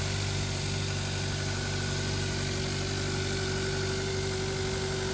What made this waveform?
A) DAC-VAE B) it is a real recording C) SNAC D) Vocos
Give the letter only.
B